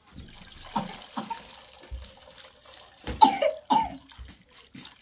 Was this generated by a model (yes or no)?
no